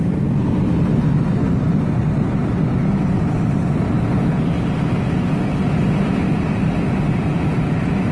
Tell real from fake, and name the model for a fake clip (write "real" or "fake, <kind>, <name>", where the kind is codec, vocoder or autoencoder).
real